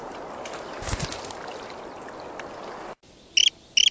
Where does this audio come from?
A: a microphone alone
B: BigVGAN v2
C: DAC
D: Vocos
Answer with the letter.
A